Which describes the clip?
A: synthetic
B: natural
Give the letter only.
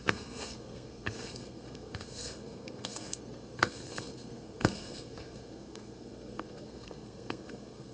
A